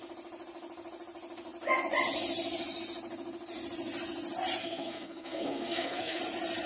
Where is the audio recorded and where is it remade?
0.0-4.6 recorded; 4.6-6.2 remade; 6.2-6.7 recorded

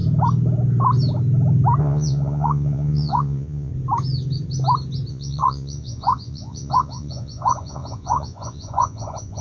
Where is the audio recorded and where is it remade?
0.0-1.8 recorded; 1.8-3.7 remade; 3.7-5.1 recorded; 5.1-9.4 remade

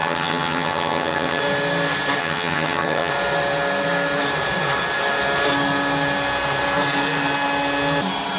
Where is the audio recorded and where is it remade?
0.0-1.4 remade; 1.4-2.2 recorded; 2.2-3.1 remade; 3.1-8.4 recorded